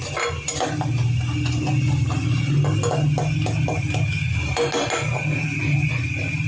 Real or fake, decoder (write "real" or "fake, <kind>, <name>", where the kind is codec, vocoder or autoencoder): real